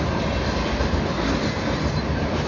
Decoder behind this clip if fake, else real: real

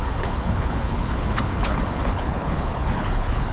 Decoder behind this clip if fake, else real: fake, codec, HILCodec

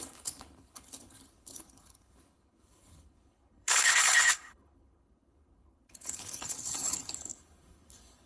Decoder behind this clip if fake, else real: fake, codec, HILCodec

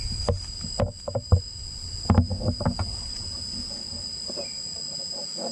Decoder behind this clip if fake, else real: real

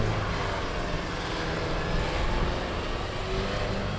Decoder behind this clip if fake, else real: real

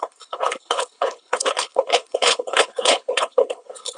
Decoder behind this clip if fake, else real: fake, codec, HILCodec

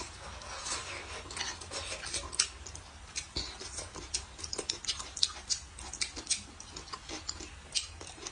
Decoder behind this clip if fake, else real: real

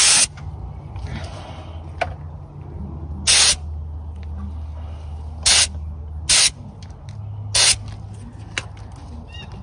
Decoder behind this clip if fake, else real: real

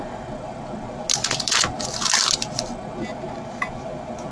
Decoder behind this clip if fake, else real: real